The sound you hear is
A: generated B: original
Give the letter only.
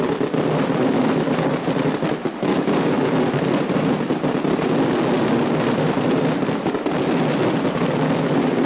B